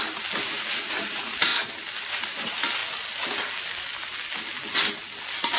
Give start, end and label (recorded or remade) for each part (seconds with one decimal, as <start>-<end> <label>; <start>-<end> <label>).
0.0-5.6 recorded